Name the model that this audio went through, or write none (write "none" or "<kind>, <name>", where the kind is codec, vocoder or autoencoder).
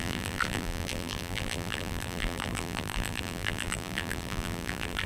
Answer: vocoder, BigVGAN v2